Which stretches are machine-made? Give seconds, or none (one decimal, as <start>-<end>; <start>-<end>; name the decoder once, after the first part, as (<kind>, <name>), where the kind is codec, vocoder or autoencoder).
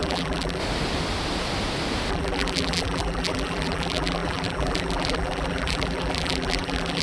0.0-0.6 (vocoder, BigVGAN v2); 2.1-7.0